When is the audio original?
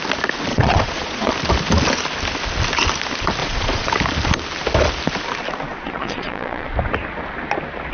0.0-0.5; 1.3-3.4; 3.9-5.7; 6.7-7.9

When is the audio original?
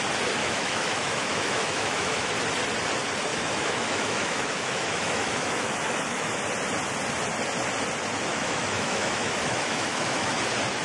0.0-0.4; 2.3-3.3; 6.4-8.3; 10.3-10.8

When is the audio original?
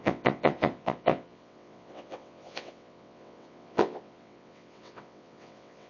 none